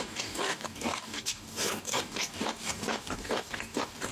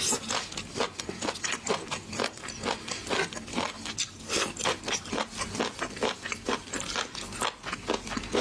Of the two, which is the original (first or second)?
second